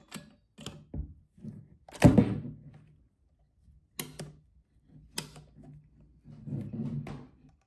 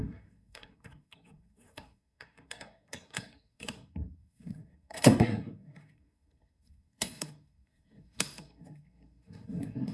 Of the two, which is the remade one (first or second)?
second